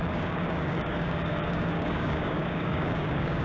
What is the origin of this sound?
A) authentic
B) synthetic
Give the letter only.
B